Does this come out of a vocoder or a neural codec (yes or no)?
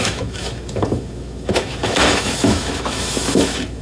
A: yes